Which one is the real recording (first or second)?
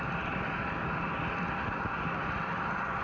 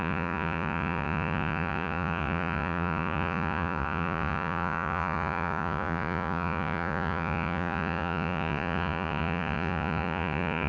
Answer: first